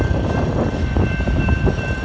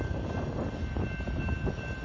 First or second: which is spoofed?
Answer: first